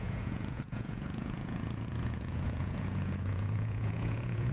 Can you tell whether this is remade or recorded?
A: remade